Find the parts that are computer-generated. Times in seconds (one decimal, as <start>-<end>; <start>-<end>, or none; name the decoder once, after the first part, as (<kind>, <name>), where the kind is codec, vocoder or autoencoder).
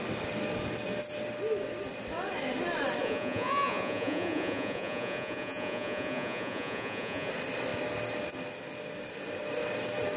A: 3.0-7.3 (vocoder, Vocos)